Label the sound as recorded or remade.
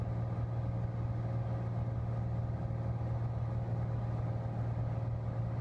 recorded